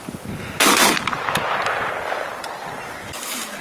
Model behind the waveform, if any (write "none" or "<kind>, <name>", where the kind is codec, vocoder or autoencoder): none